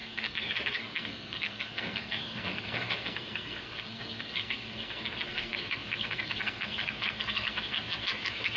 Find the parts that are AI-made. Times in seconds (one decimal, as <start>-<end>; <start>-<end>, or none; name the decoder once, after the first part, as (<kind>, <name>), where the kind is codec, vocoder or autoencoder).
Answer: 0.0-8.6 (codec, SNAC)

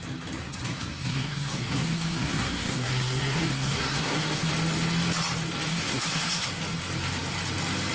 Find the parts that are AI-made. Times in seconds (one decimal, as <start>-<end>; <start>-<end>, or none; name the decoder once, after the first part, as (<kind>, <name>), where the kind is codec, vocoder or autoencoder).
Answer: 0.4-4.5 (codec, SNAC); 5.7-6.5

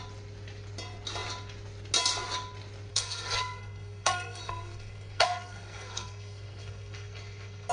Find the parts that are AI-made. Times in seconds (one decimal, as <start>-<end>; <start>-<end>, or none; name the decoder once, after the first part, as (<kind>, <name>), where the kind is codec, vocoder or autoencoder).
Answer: 2.9-7.7 (codec, SNAC)

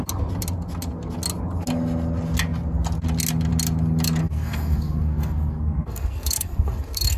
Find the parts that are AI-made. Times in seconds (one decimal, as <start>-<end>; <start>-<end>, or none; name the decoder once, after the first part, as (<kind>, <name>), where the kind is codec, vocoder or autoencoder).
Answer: 4.2-7.2 (codec, SNAC)